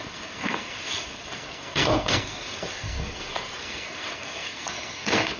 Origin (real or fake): fake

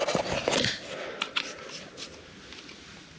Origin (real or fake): real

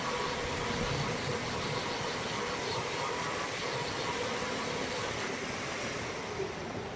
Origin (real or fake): real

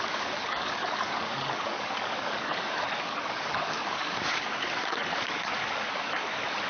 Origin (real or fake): fake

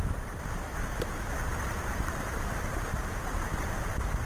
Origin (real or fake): fake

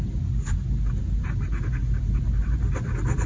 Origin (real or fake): real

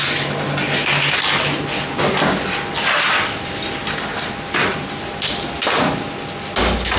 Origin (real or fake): real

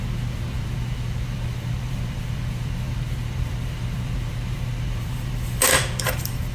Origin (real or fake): fake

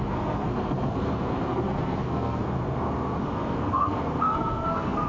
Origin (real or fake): fake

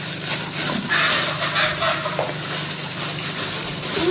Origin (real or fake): real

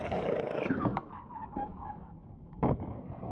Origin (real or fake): fake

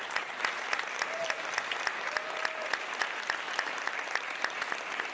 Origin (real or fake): real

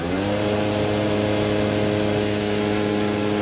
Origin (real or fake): real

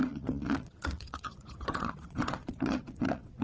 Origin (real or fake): fake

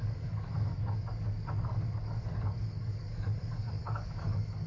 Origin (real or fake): fake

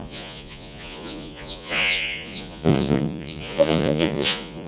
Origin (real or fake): fake